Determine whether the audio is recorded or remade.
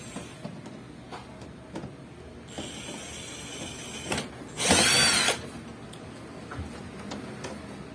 recorded